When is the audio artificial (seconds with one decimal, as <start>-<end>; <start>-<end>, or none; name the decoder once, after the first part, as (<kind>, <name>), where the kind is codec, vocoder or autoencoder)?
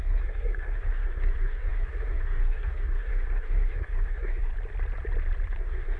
0.0-4.5 (codec, SNAC); 5.6-6.0